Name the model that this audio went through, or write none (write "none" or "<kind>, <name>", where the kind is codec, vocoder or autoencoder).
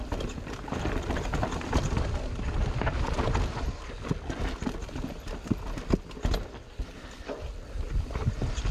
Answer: none